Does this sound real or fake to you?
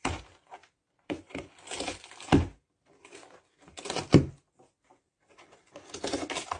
real